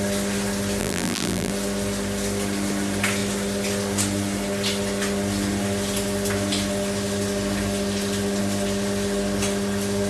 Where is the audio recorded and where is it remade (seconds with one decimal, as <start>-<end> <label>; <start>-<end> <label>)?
0.0-0.8 recorded; 0.8-1.5 remade; 1.5-10.1 recorded